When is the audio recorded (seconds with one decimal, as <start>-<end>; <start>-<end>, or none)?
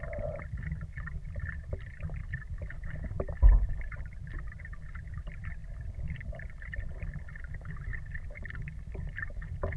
0.0-9.8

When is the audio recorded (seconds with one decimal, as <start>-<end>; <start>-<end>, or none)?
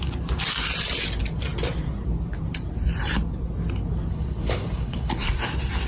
0.0-4.1; 5.3-5.9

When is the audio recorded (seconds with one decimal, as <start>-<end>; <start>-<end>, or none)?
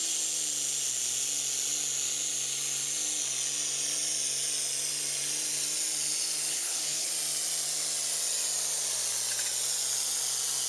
0.0-6.5; 7.1-10.7